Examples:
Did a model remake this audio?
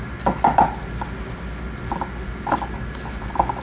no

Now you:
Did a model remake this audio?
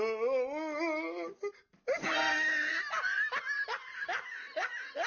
no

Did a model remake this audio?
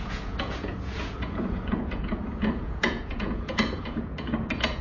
yes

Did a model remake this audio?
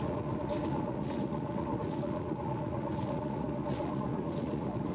yes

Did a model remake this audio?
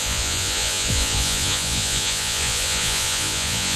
yes